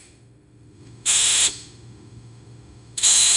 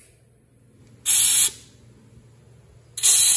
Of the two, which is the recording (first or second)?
second